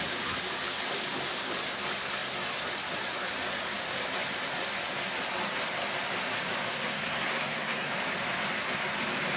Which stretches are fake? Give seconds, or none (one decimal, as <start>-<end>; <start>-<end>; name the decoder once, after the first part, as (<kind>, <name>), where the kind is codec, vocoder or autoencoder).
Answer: 6.7-7.9 (codec, SNAC)